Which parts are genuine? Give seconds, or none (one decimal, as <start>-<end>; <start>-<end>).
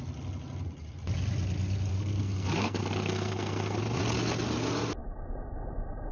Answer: 0.0-1.9; 3.8-6.1